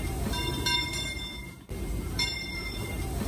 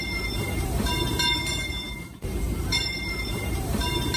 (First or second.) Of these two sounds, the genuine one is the first